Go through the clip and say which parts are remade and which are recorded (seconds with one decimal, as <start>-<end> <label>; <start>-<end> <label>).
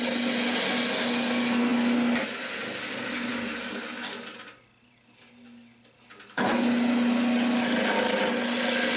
0.0-9.0 recorded